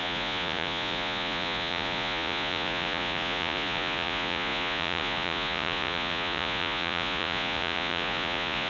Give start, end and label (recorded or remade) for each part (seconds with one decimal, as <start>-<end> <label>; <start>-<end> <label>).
0.0-8.7 remade